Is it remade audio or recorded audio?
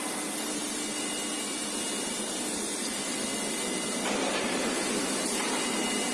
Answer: recorded